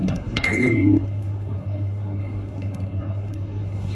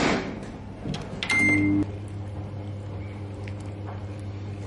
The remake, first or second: first